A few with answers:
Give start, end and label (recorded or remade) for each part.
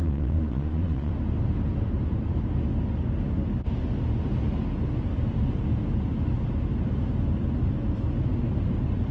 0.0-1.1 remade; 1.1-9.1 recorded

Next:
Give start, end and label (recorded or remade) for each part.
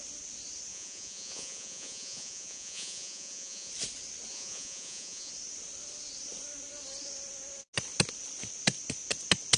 0.0-0.7 recorded; 0.7-3.7 remade; 3.7-4.3 recorded; 4.3-5.3 remade; 5.3-9.6 recorded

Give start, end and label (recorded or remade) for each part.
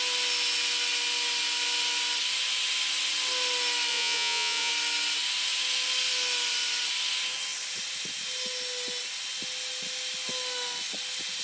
0.0-3.9 recorded; 3.9-4.7 remade; 4.7-11.4 recorded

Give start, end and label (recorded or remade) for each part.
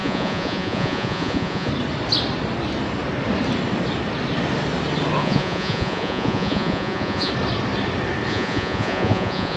0.0-1.7 remade; 1.7-5.2 recorded; 5.2-7.3 remade; 7.3-8.3 recorded; 8.3-9.6 remade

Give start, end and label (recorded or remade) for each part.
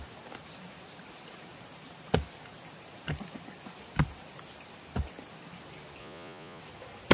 0.0-6.0 recorded; 6.0-6.6 remade; 6.6-7.1 recorded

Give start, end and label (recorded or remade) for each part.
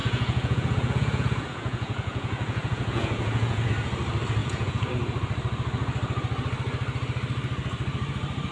0.0-3.7 remade; 3.7-4.4 recorded; 4.4-4.9 remade; 4.9-8.5 recorded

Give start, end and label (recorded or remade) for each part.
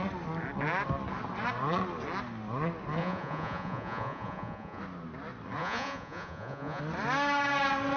0.0-3.0 recorded; 3.0-4.8 remade; 4.8-5.6 recorded; 5.6-6.8 remade; 6.8-8.0 recorded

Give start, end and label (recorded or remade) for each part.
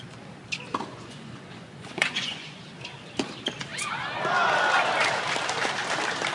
0.0-0.9 recorded; 0.9-2.6 remade; 2.6-6.3 recorded